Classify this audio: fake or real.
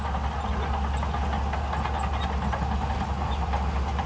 real